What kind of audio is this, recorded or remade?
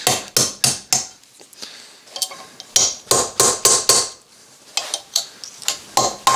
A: recorded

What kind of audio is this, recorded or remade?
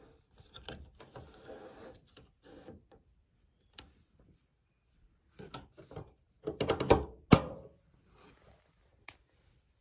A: recorded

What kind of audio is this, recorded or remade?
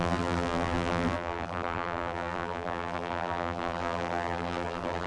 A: remade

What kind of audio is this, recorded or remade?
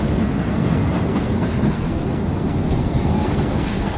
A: remade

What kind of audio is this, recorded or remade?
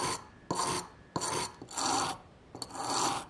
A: recorded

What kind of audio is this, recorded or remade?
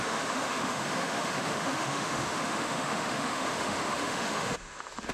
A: remade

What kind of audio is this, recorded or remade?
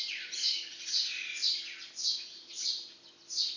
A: recorded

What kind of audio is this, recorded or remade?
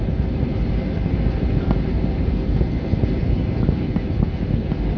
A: recorded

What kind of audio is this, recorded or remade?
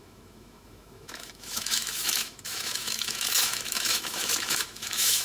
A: remade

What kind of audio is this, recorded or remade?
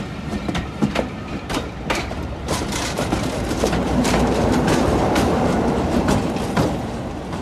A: remade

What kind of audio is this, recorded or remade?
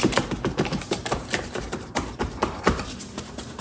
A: remade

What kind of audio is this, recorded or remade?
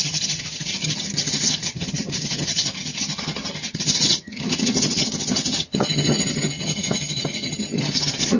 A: remade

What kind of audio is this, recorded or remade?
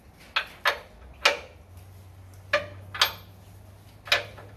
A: recorded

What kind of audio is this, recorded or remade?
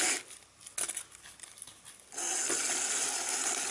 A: recorded